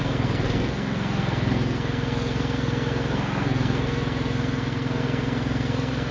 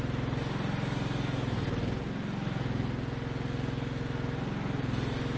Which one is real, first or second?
second